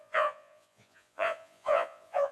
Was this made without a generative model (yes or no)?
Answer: no